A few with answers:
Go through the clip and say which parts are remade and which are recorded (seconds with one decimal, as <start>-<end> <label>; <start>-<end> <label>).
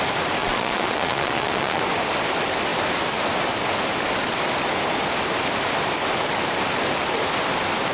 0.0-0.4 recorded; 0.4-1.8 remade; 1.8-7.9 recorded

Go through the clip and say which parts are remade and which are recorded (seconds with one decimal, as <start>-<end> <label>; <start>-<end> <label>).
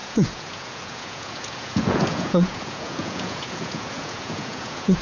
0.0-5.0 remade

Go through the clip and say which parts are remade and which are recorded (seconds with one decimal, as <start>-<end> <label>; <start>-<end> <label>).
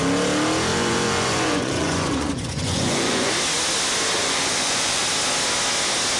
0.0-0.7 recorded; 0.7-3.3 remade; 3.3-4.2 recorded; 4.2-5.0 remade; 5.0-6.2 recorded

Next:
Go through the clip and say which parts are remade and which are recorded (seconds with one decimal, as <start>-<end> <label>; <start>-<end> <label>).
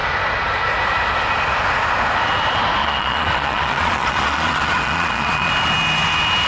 0.0-2.8 recorded; 2.8-5.5 remade; 5.5-6.5 recorded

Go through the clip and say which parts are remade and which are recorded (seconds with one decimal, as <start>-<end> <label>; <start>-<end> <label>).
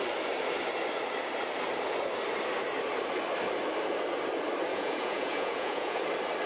0.0-4.7 recorded; 4.7-6.0 remade; 6.0-6.5 recorded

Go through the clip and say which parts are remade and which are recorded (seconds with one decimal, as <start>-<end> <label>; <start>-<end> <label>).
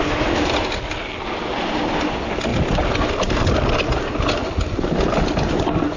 0.0-6.0 recorded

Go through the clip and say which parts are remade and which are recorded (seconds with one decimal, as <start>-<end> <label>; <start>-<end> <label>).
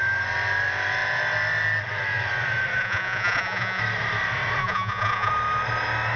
0.0-2.8 recorded; 2.8-3.8 remade; 3.8-4.6 recorded; 4.6-5.3 remade; 5.3-6.2 recorded